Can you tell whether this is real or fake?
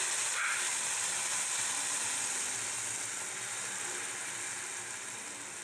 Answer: real